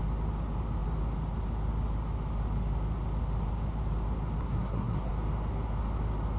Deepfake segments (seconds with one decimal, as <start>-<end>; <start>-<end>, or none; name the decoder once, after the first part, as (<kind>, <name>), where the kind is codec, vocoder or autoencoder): 4.4-5.1 (codec, SNAC)